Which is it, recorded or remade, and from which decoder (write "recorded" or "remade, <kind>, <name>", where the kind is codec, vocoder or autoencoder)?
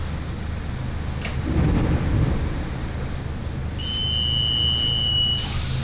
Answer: recorded